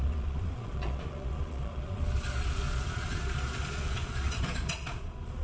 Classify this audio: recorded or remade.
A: remade